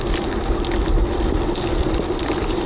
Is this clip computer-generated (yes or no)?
no